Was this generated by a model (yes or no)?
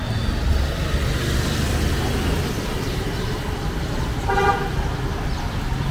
no